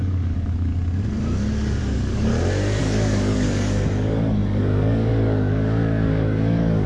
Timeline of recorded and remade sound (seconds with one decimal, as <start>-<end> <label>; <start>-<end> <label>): 0.0-0.7 remade; 0.7-1.8 recorded; 1.8-2.3 remade; 2.3-2.8 recorded; 2.8-6.9 remade